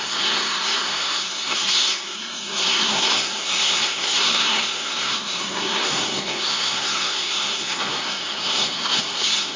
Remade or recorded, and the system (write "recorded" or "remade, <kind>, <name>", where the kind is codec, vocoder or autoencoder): remade, codec, SNAC